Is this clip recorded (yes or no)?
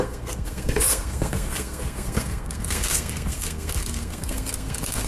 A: no